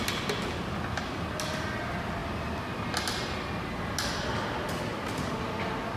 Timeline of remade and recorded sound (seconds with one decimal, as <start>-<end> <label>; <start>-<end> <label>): 0.0-6.0 recorded